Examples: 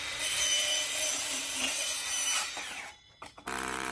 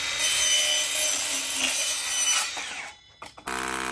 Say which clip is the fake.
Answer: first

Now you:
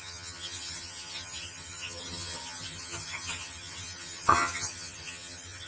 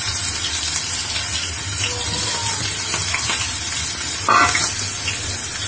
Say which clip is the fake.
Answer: first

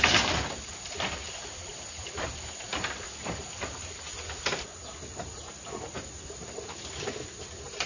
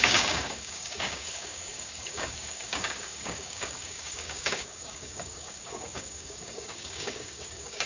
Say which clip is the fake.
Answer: second